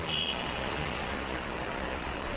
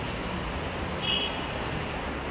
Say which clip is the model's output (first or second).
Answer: first